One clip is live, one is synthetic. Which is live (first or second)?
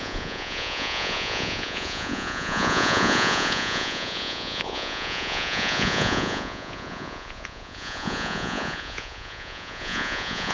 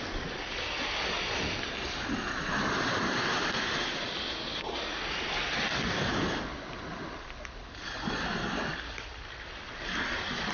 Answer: second